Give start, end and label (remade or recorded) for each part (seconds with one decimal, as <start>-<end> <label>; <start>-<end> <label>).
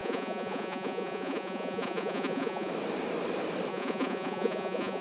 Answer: 0.0-2.7 remade; 2.7-3.7 recorded; 3.7-5.0 remade